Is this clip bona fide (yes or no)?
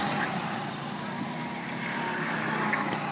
yes